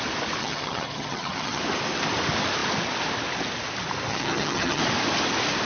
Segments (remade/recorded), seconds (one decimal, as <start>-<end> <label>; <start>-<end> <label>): 0.0-0.4 recorded; 0.4-1.6 remade; 1.6-4.1 recorded; 4.1-4.8 remade; 4.8-5.7 recorded